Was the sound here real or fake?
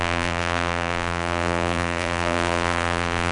fake